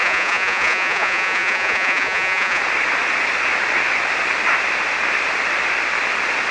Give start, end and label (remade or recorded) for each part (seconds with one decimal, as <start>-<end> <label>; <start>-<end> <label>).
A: 0.0-2.6 remade; 2.6-6.5 recorded